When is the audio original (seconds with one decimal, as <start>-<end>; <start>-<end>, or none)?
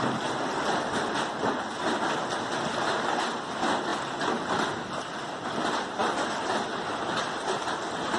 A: 0.0-8.2